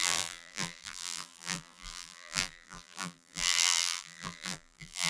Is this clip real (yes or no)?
no